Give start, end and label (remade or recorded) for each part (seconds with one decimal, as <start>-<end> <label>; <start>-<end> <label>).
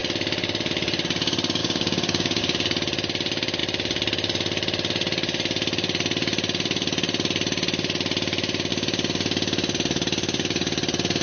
0.0-1.6 recorded; 1.6-2.4 remade; 2.4-11.2 recorded